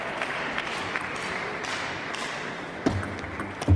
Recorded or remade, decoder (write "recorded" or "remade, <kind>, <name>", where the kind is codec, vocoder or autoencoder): remade, vocoder, BigVGAN v2